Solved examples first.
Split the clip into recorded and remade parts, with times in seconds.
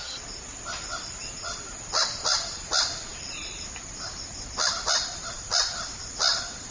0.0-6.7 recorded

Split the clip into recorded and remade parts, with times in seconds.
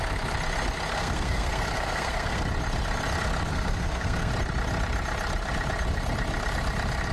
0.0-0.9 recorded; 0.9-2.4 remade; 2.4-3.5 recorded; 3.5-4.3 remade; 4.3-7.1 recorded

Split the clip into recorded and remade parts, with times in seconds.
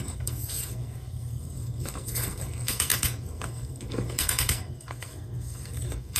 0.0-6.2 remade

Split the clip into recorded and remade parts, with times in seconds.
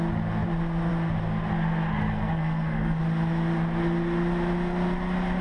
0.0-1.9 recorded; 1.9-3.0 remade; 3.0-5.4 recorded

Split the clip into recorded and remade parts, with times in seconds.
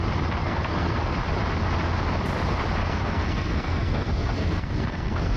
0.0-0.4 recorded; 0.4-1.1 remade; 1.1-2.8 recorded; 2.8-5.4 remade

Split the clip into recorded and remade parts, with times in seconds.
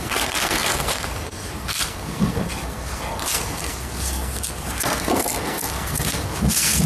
0.0-6.9 remade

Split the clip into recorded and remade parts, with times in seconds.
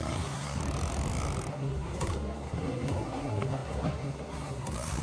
0.0-0.6 remade; 0.6-1.5 recorded; 1.5-5.0 remade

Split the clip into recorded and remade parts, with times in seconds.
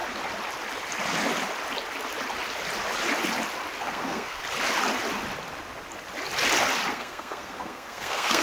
0.0-3.8 recorded; 3.8-4.4 remade; 4.4-6.9 recorded; 6.9-8.4 remade